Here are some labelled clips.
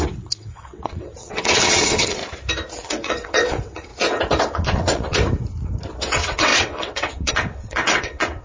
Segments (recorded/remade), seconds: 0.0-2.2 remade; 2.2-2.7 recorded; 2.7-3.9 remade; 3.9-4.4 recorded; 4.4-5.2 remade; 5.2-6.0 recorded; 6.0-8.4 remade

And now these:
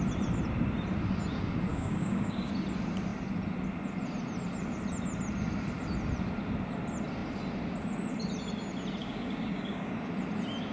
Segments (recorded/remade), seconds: 0.0-1.7 recorded; 1.7-2.5 remade; 2.5-9.0 recorded; 9.0-9.9 remade; 9.9-10.7 recorded